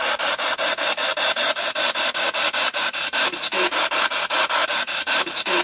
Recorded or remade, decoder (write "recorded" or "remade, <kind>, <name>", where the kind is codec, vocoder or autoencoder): remade, vocoder, BigVGAN v2